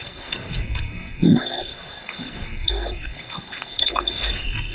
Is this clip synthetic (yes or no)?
yes